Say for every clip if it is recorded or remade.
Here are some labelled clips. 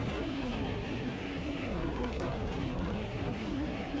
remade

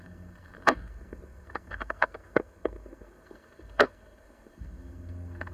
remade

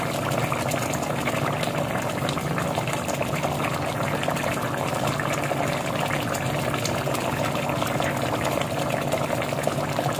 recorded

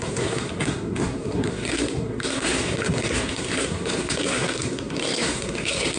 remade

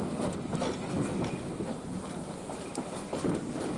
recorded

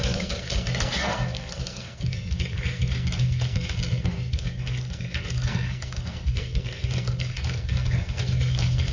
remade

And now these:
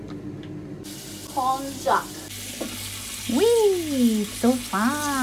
recorded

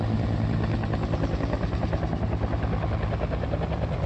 recorded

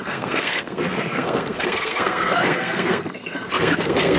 remade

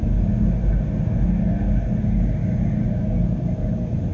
recorded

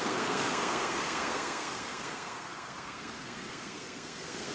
remade